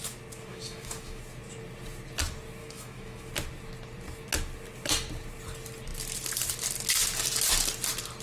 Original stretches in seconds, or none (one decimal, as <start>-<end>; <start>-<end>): 0.0-0.5; 1.2-2.6; 3.3-8.2